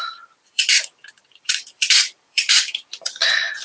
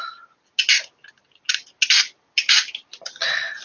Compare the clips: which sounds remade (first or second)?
first